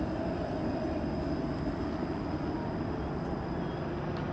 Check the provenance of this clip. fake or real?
real